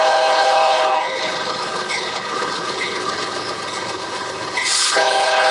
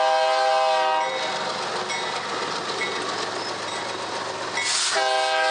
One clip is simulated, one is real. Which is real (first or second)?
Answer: second